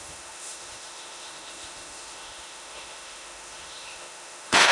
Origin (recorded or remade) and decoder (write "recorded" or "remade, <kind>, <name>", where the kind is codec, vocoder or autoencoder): remade, autoencoder, DAC-VAE